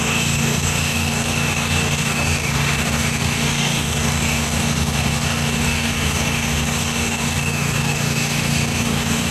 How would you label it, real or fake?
fake